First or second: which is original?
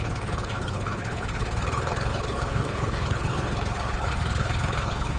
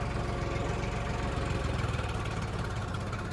second